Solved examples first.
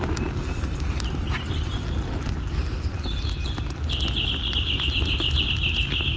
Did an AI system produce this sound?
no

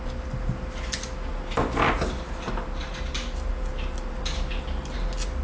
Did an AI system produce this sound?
no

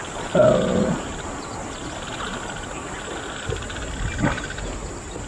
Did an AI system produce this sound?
no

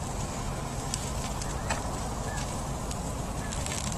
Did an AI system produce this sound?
no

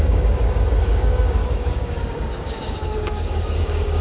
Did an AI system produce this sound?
yes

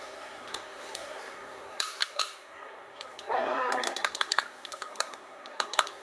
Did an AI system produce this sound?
yes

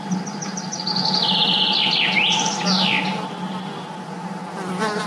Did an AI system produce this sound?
no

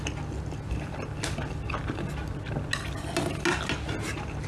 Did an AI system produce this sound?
no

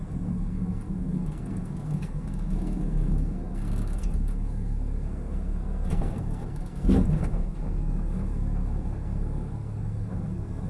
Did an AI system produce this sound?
yes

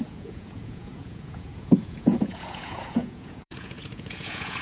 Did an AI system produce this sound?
yes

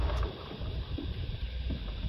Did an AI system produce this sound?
yes